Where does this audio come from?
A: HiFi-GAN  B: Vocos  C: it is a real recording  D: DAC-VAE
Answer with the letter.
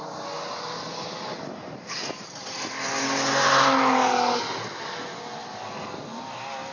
C